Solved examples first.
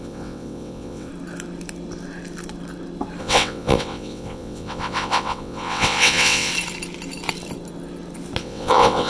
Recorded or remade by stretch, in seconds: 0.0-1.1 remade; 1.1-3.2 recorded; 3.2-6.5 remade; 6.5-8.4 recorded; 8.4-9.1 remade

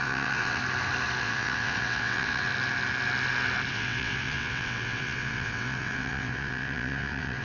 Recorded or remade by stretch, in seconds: 0.0-0.6 remade; 0.6-1.2 recorded; 1.2-2.5 remade; 2.5-3.7 recorded; 3.7-7.4 remade

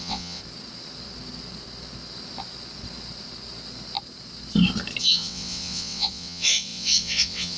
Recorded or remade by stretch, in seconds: 0.0-0.4 remade; 0.4-5.0 recorded; 5.0-7.6 remade

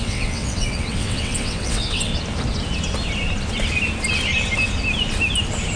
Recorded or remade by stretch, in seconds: 0.0-2.1 remade; 2.1-5.8 recorded